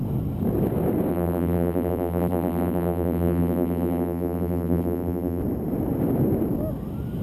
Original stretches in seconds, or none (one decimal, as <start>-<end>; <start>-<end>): 0.0-1.1; 5.4-7.2